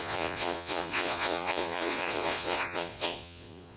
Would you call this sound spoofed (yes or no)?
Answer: yes